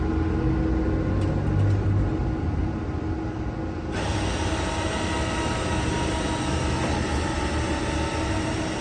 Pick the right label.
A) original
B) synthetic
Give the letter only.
A